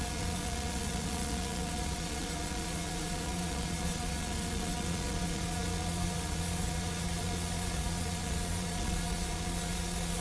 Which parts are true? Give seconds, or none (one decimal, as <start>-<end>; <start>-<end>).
none